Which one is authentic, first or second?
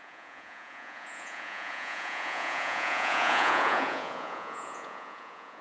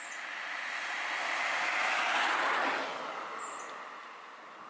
second